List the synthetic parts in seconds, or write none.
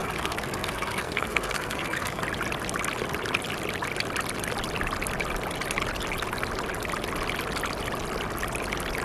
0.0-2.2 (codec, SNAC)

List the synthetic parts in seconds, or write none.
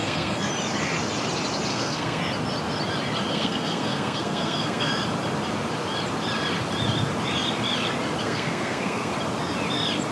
0.0-0.5 (codec, SNAC); 1.7-2.2; 3.3-4.9; 8.2-9.1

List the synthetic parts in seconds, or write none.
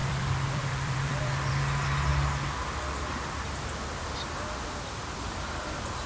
0.0-1.5 (vocoder, BigVGAN v2)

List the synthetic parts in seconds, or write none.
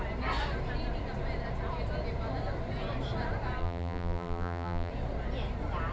3.6-4.9 (vocoder, BigVGAN v2)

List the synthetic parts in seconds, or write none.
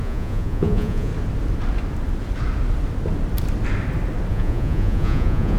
0.0-1.1 (vocoder, Vocos); 4.3-5.6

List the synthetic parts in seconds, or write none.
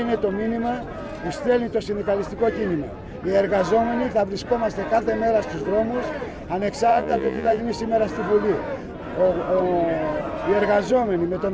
6.9-7.6 (vocoder, Vocos)